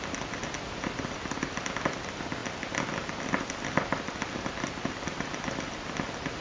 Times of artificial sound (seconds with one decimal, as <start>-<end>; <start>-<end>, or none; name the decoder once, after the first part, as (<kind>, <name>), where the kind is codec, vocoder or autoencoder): none